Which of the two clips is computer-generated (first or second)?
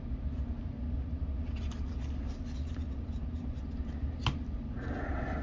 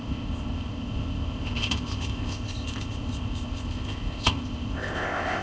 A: second